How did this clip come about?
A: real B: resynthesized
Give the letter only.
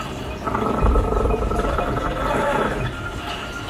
B